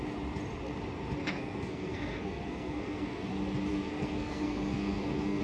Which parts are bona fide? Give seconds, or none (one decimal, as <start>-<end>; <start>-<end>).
0.0-1.2; 3.3-3.7